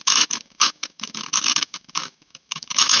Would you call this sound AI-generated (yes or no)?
yes